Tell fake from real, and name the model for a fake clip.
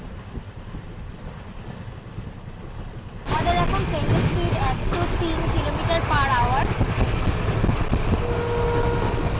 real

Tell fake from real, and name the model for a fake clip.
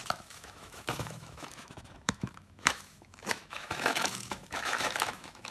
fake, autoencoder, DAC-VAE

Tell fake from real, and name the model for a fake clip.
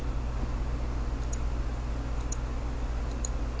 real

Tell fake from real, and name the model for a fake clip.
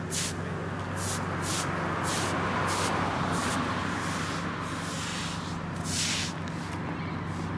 real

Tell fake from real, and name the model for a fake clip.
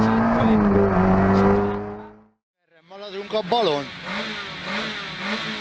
real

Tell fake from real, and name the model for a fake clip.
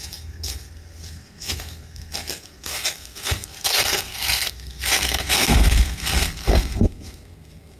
fake, codec, SNAC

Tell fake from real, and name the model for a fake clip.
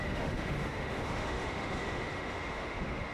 fake, autoencoder, DAC-VAE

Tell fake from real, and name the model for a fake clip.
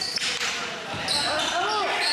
real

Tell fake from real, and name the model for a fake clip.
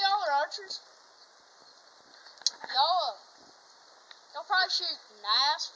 real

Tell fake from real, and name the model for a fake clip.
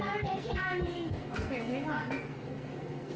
fake, codec, SNAC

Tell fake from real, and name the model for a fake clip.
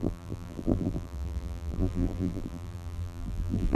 fake, vocoder, BigVGAN v2